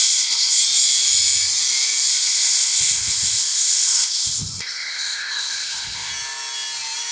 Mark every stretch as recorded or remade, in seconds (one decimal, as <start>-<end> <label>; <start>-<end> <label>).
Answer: 0.0-0.6 remade; 0.6-2.1 recorded; 2.1-6.1 remade; 6.1-7.1 recorded